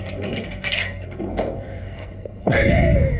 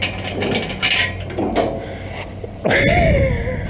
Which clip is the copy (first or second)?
first